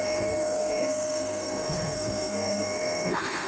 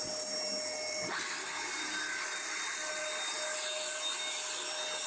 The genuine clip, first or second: second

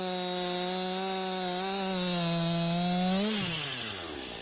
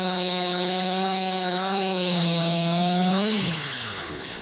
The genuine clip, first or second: first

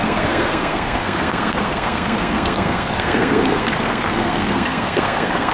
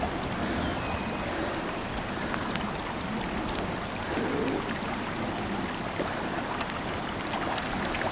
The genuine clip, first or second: second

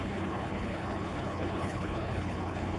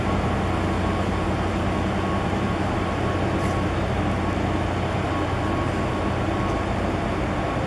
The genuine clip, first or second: second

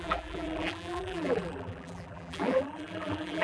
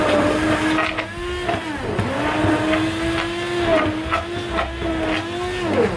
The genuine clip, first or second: second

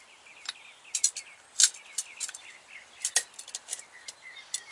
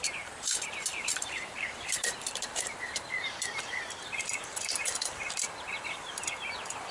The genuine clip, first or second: first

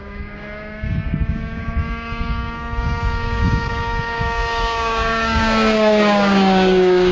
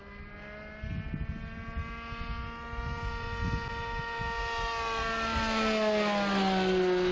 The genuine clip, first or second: second